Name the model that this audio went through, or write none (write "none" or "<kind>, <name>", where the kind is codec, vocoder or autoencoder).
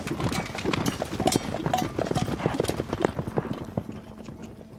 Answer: none